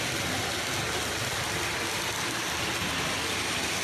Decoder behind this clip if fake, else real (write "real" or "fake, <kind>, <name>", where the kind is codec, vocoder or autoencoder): real